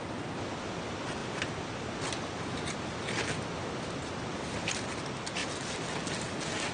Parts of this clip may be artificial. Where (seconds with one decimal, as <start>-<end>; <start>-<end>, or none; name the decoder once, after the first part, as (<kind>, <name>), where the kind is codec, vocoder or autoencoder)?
none